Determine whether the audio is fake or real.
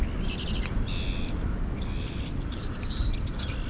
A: real